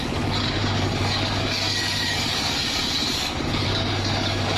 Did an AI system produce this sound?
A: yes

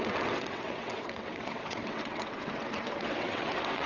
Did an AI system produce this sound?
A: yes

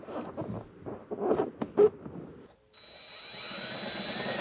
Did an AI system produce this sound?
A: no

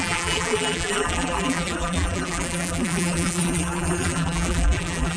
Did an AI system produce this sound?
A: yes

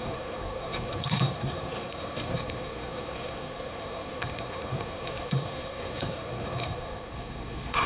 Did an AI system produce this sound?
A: yes